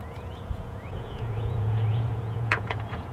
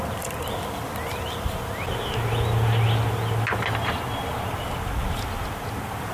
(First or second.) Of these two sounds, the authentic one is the second